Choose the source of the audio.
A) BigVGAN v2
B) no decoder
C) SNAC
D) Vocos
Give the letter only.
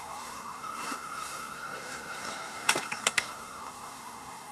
C